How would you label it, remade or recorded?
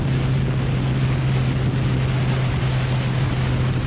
recorded